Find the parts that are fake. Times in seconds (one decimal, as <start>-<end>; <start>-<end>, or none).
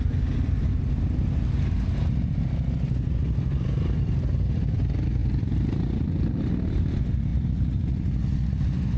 none